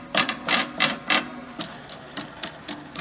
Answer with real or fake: fake